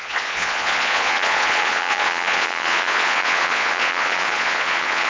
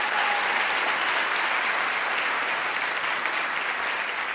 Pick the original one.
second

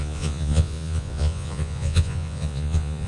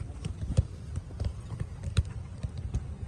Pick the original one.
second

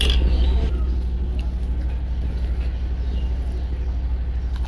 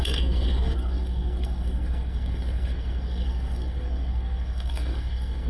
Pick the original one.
first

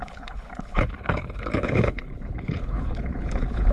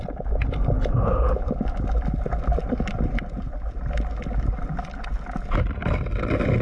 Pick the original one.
second